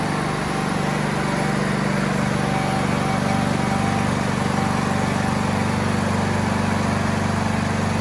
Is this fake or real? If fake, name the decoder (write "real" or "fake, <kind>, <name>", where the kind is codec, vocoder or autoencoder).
real